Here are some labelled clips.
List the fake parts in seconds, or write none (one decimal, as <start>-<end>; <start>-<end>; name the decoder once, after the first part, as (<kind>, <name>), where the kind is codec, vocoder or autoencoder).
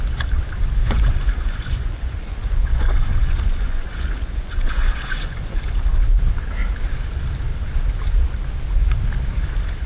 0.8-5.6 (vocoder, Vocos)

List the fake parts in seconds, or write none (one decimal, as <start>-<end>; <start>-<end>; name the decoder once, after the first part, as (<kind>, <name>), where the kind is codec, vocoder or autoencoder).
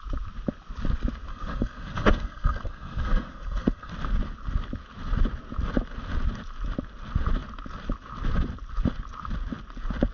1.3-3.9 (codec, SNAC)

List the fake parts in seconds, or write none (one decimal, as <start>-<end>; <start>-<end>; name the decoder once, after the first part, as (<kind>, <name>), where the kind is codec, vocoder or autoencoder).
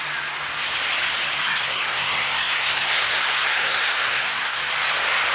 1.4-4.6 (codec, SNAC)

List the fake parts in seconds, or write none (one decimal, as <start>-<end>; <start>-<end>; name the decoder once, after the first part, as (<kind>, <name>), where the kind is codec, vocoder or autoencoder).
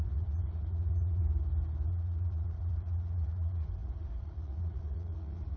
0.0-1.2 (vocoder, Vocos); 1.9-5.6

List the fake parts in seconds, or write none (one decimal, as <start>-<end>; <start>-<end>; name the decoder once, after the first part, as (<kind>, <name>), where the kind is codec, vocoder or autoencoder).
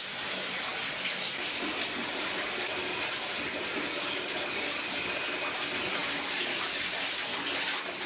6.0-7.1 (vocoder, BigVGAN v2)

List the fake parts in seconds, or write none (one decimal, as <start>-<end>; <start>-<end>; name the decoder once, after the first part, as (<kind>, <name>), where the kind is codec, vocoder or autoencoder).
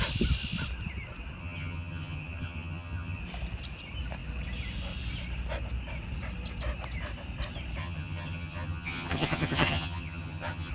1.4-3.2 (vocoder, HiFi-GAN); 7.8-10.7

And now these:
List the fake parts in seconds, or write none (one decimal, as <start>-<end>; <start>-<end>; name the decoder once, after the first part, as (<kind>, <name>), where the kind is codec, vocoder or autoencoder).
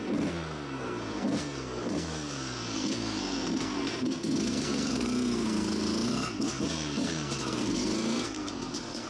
0.0-9.1 (codec, SNAC)